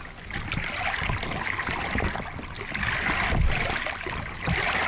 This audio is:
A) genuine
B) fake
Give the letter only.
A